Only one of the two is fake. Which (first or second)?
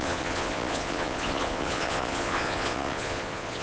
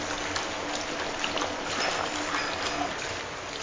first